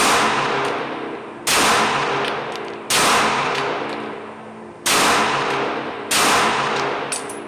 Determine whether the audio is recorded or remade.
recorded